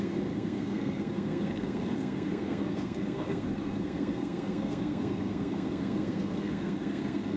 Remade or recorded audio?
remade